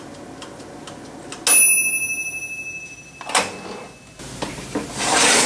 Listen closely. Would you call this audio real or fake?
real